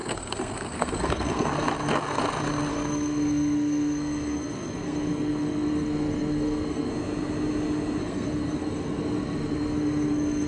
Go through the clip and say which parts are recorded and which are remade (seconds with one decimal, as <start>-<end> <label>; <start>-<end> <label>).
0.0-1.5 remade; 1.5-2.7 recorded; 2.7-6.9 remade; 6.9-8.0 recorded; 8.0-10.5 remade